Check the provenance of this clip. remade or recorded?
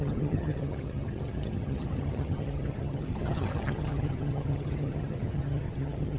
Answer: remade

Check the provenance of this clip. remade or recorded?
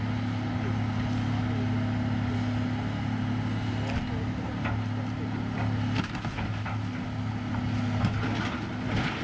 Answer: recorded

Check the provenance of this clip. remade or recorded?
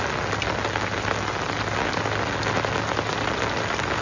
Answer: recorded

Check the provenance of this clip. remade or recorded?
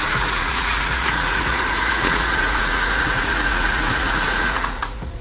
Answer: remade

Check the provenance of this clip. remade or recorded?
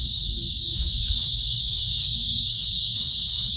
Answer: remade